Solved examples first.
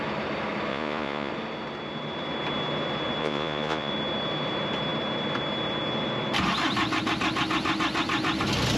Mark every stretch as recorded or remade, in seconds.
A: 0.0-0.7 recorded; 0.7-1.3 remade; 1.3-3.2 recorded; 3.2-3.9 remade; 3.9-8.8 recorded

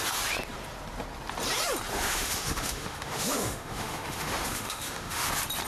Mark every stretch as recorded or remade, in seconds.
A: 0.0-1.9 recorded; 1.9-5.3 remade; 5.3-5.7 recorded

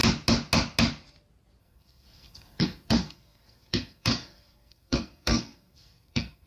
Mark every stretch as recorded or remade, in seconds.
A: 0.0-1.6 recorded; 1.6-6.5 remade

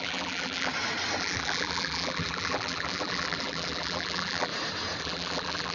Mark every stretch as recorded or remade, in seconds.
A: 0.0-0.7 remade; 0.7-1.2 recorded; 1.2-4.5 remade; 4.5-5.0 recorded; 5.0-5.7 remade

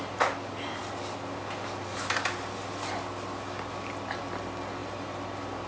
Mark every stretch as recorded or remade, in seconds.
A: 0.0-5.7 recorded

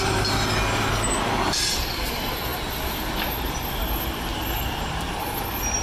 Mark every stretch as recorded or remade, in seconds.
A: 0.0-5.8 recorded

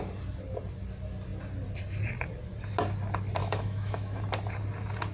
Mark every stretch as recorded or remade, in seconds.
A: 0.0-3.4 recorded; 3.4-4.2 remade; 4.2-5.1 recorded

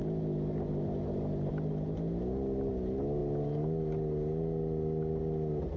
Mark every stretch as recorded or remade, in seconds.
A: 0.0-5.8 recorded